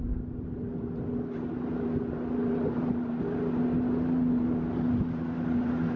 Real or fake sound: real